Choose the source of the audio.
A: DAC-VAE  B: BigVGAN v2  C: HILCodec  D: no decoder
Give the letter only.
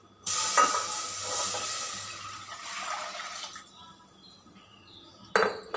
D